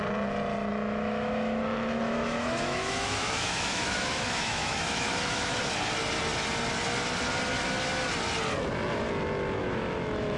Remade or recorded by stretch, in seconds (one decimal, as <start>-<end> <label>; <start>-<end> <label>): 0.0-0.7 recorded; 0.7-5.6 remade; 5.6-9.6 recorded; 9.6-10.4 remade